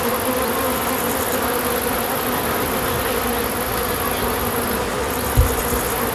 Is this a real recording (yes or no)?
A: yes